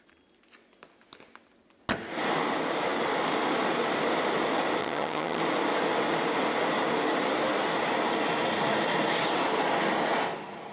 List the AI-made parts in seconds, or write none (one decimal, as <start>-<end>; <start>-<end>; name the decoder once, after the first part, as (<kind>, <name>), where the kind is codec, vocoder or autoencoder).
4.8-5.4 (vocoder, HiFi-GAN)